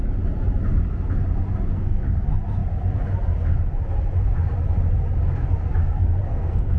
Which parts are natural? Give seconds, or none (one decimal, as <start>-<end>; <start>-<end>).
0.0-1.7; 2.2-5.8